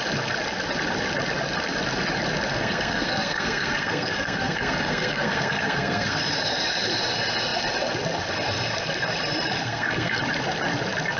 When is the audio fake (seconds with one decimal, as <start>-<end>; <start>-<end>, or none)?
2.5-6.2; 9.6-10.2